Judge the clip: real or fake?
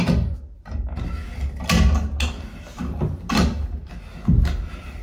real